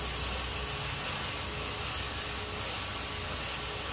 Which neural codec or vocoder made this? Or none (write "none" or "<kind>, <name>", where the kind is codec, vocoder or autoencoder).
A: none